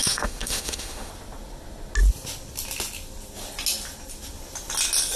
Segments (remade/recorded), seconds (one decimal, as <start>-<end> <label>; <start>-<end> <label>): 0.0-1.1 remade; 1.1-5.2 recorded